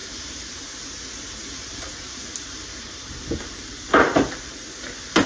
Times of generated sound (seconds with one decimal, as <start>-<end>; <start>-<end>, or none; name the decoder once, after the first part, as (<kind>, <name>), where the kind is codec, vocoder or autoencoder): 0.0-0.6 (vocoder, BigVGAN v2); 1.4-4.6